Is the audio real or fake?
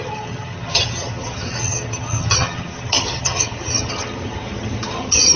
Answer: fake